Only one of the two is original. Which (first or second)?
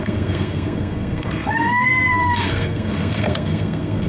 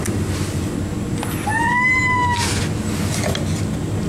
second